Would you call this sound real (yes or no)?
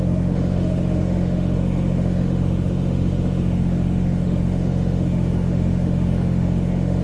no